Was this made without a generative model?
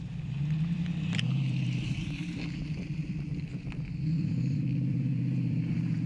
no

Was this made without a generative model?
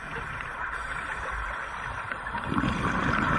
no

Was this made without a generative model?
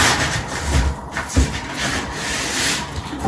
no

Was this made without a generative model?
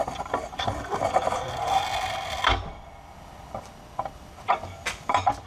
no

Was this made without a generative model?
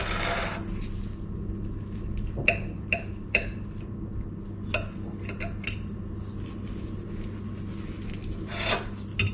yes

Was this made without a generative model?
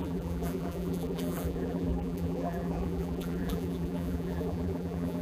no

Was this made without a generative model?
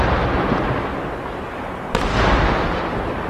yes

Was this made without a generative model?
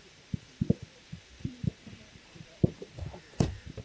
no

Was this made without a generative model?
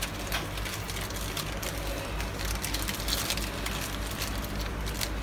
yes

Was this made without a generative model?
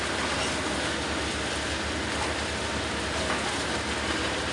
yes